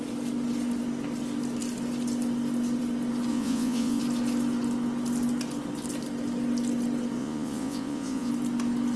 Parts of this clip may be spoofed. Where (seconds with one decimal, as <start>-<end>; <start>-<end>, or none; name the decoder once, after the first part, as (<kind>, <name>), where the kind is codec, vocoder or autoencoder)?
3.3-4.0 (vocoder, Vocos); 7.2-8.3